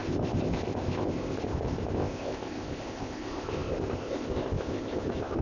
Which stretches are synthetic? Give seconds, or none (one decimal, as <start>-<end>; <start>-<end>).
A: 0.0-5.4